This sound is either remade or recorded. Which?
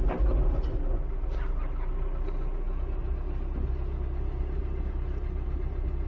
recorded